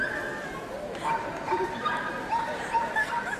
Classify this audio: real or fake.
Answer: real